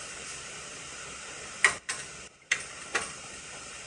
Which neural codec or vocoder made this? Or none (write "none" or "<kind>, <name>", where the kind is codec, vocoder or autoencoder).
none